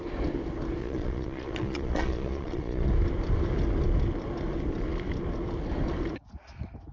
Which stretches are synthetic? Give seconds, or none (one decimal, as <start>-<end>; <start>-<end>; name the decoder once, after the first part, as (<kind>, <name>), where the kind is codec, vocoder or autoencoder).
0.8-2.9 (vocoder, Vocos)